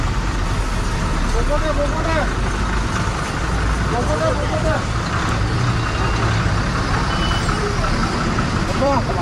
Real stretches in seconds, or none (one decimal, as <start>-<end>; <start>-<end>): 0.0-8.0